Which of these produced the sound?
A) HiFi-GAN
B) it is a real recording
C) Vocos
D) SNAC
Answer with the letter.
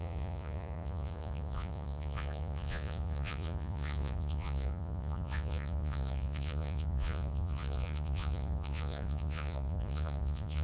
C